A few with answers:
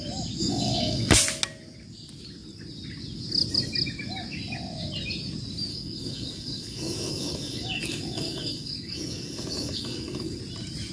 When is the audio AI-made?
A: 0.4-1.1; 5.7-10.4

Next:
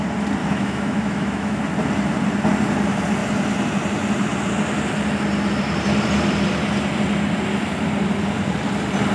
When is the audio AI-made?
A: 0.4-1.6

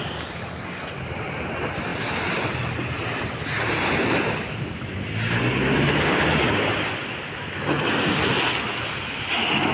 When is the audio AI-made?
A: none

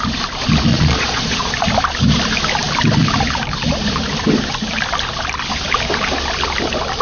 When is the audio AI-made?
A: 0.7-1.5

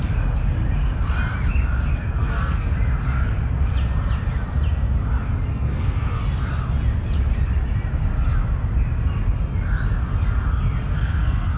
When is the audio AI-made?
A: 1.9-2.7; 5.5-6.2; 10.9-11.6